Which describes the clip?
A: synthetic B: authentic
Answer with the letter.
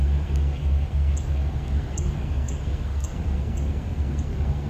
A